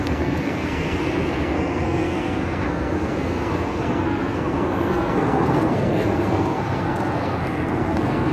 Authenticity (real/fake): fake